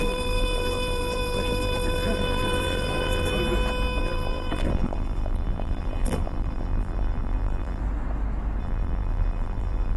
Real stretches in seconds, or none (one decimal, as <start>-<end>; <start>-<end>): 3.3-4.0; 7.8-8.6